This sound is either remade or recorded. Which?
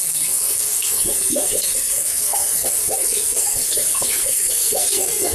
remade